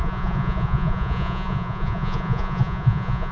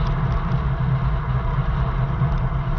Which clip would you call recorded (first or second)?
second